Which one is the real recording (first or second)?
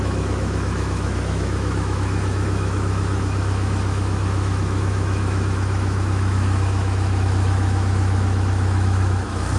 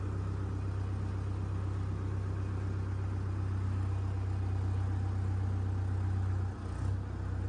second